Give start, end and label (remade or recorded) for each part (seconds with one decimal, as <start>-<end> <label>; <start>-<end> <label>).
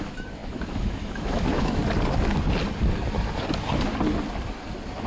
0.0-1.8 remade; 1.8-5.1 recorded